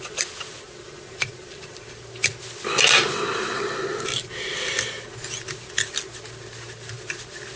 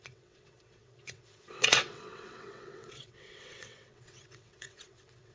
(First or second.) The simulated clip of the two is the second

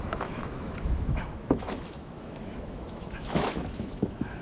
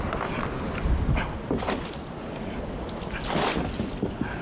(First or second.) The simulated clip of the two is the first